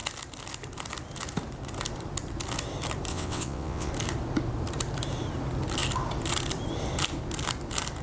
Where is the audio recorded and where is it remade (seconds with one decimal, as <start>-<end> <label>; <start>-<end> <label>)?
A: 0.0-3.1 recorded; 3.1-3.9 remade; 3.9-8.0 recorded